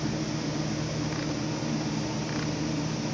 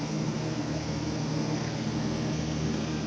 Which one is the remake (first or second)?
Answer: second